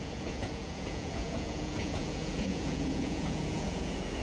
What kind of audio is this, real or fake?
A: fake